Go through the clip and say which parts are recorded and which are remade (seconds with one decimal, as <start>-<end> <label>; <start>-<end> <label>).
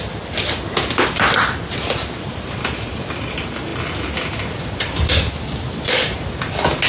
0.0-6.9 recorded